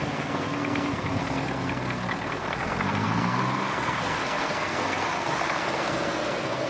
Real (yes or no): no